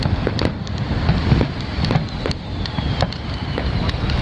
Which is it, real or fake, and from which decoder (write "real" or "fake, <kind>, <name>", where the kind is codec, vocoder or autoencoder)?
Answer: real